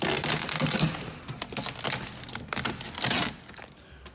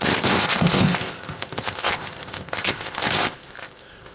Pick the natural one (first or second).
first